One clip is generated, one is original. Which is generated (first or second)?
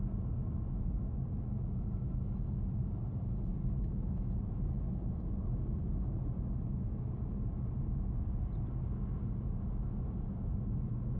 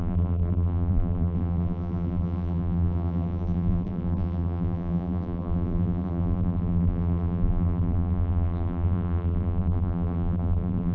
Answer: second